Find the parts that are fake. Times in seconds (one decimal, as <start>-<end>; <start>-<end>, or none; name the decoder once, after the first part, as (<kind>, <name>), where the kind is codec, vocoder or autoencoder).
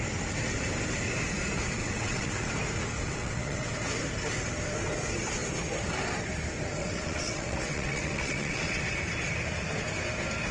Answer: 1.8-2.5 (vocoder, WaveNeXt); 3.0-3.7; 6.8-8.8